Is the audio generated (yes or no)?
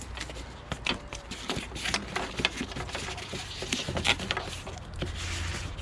no